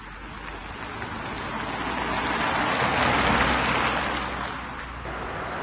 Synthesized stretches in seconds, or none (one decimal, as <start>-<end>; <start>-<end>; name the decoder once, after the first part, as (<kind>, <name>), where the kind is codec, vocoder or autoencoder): none